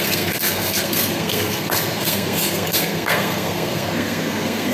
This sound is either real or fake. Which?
fake